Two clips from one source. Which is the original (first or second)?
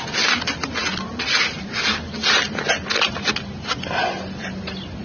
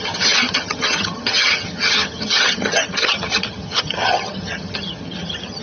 first